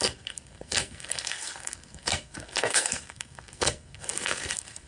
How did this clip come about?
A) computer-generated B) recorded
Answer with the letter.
A